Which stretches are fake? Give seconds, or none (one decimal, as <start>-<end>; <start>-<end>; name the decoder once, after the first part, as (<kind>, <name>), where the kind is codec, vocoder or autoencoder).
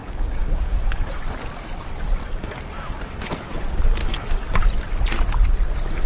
0.0-1.4 (codec, DAC); 2.2-3.4; 4.0-4.6